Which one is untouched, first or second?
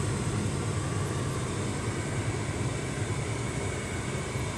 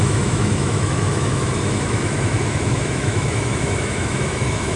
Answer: first